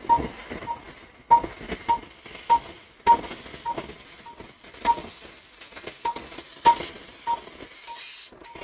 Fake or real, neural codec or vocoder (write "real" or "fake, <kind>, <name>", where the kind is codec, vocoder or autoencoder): real